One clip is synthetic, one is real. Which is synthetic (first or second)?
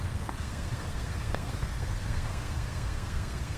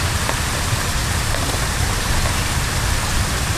first